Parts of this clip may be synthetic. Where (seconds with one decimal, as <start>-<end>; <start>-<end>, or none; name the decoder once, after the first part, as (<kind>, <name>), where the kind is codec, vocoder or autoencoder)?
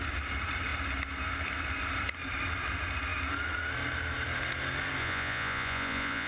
5.0-6.3 (vocoder, Vocos)